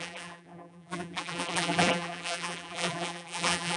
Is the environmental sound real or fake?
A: fake